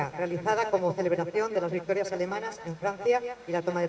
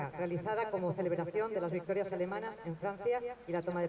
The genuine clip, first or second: second